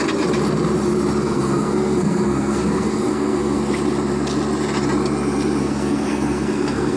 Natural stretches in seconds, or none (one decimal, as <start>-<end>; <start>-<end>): 0.0-1.2; 3.6-5.6